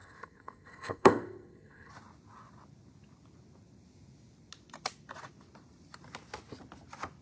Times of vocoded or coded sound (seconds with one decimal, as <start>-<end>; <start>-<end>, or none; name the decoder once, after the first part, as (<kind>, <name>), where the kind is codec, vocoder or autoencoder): 0.0-1.9 (codec, SNAC)